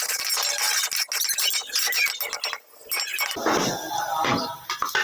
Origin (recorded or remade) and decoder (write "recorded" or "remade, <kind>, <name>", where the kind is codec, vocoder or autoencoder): recorded